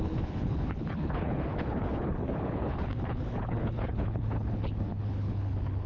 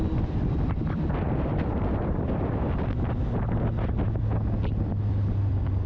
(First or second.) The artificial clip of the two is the first